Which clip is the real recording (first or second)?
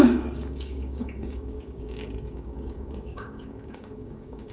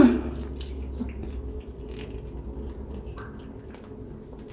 second